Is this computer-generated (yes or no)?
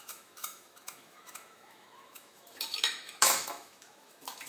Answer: yes